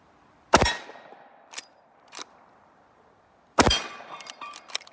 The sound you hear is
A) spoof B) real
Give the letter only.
A